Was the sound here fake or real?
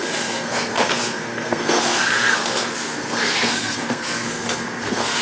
fake